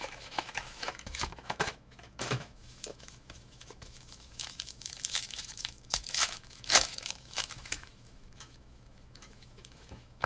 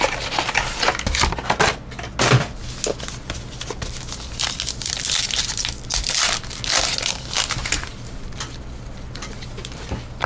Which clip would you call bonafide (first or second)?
second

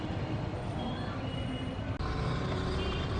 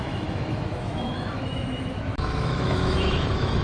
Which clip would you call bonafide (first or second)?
first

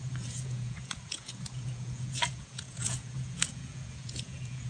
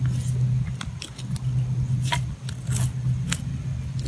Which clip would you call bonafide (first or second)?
second